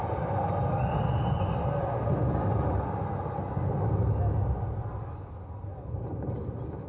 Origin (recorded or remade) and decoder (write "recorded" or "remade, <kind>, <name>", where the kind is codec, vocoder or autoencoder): recorded